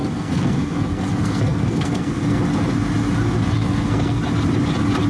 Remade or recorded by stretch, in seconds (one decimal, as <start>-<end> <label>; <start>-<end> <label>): 0.0-2.4 remade; 2.4-3.6 recorded; 3.6-4.2 remade; 4.2-5.1 recorded